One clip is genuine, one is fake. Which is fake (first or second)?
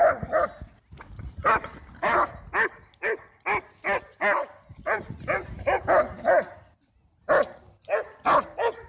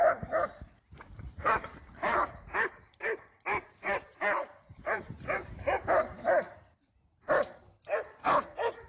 second